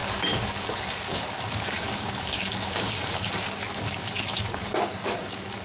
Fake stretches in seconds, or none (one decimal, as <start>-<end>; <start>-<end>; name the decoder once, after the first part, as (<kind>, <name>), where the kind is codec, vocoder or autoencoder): 0.0-5.6 (codec, DAC)